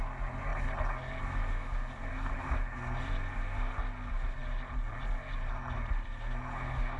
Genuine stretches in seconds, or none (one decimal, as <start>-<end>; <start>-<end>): 0.0-7.0